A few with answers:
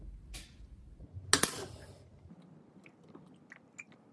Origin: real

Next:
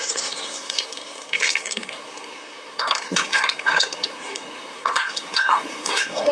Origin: fake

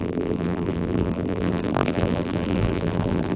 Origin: fake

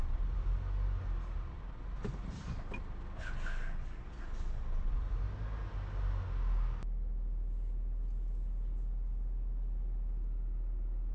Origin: real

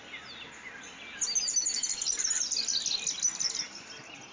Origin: real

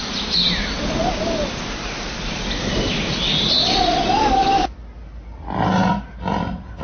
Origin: real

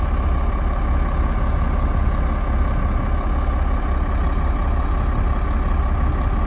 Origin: real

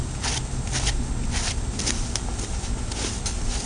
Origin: real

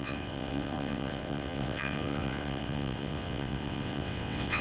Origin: fake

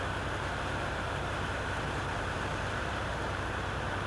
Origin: fake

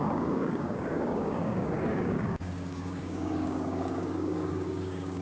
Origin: fake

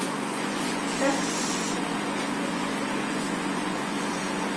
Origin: fake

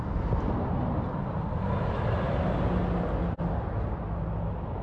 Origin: real